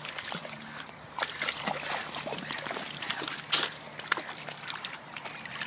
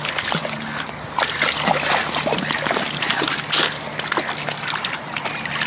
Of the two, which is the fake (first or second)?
first